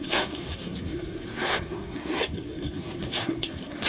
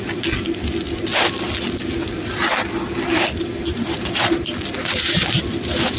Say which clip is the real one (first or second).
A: second